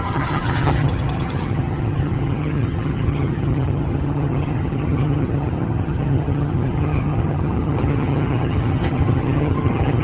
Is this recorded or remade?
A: remade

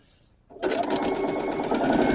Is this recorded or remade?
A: recorded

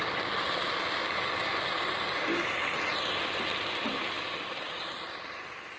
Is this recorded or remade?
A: recorded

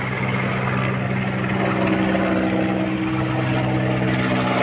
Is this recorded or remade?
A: recorded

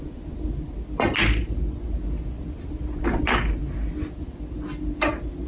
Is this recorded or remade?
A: recorded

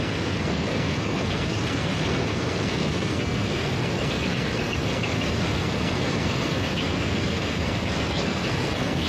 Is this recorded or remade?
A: remade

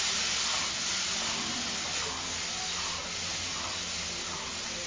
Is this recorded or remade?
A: recorded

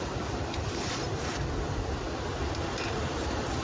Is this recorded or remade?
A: recorded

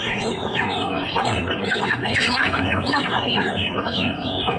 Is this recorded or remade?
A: remade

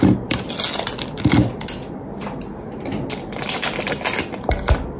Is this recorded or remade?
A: recorded